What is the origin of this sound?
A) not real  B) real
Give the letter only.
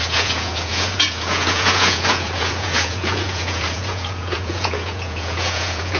A